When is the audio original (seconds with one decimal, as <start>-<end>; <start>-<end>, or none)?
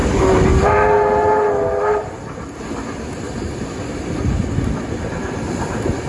0.0-6.1